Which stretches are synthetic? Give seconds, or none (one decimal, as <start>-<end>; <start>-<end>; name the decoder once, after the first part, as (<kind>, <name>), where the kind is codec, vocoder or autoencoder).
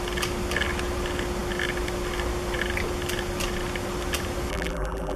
4.5-5.2 (vocoder, BigVGAN v2)